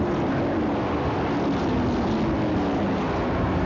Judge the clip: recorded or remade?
recorded